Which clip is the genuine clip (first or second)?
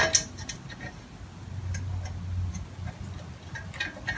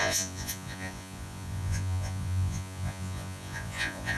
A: first